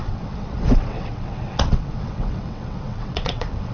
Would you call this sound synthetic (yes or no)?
yes